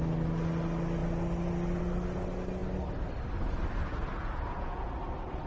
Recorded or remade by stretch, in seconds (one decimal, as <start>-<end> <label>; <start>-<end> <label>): 0.0-4.1 recorded; 4.1-4.9 remade; 4.9-5.5 recorded